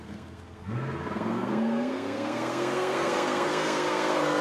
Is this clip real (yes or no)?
no